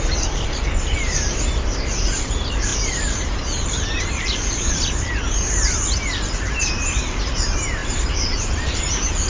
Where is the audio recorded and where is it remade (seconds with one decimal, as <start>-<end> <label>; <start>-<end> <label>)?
0.0-9.3 remade